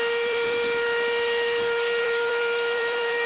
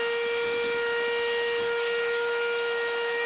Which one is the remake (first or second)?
first